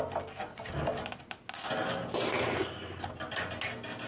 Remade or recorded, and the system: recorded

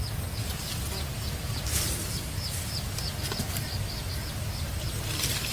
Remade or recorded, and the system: recorded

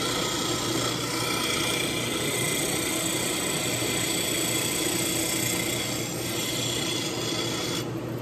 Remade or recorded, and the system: recorded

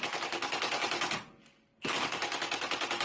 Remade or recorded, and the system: recorded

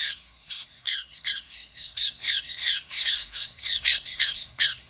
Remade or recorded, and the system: remade, codec, SNAC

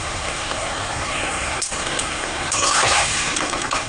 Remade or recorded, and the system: remade, codec, SNAC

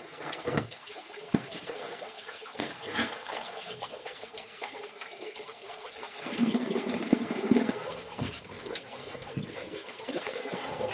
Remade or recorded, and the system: remade, codec, SNAC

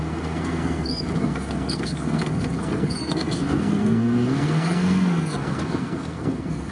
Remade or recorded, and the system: remade, codec, SNAC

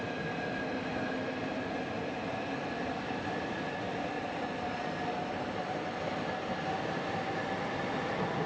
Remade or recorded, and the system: recorded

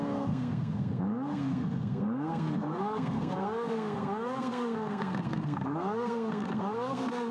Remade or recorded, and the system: remade, codec, SNAC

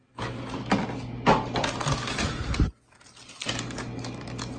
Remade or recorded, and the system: recorded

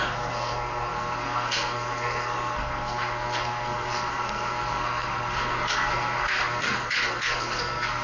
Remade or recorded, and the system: remade, codec, SNAC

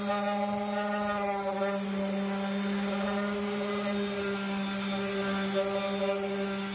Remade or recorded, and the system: recorded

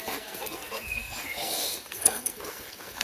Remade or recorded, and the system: remade, codec, SNAC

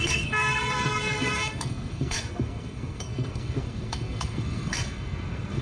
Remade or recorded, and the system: remade, codec, SNAC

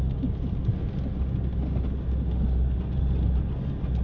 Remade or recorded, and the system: recorded